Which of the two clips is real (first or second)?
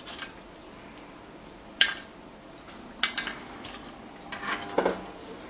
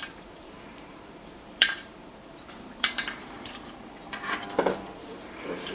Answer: first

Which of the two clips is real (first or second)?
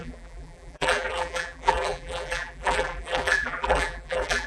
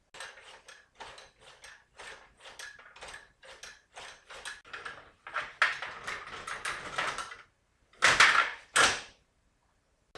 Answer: second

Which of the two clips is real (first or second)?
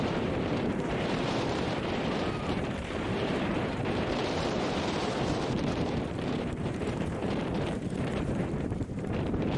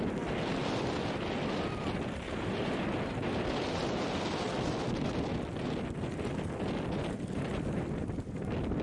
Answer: second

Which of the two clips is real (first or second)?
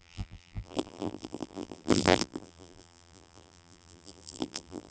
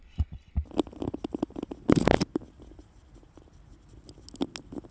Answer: second